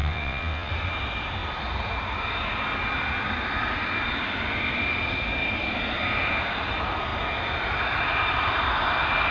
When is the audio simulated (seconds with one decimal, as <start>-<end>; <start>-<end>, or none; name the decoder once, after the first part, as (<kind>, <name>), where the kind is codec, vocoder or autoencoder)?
0.0-0.7 (vocoder, WaveNeXt)